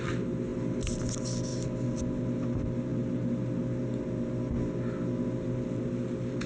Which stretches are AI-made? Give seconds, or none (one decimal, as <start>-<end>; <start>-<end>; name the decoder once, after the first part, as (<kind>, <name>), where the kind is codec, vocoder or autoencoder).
none